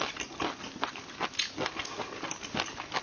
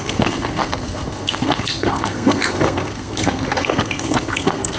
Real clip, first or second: first